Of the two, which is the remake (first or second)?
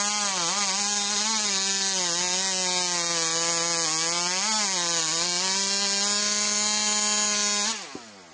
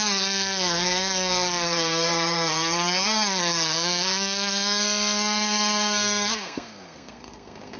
second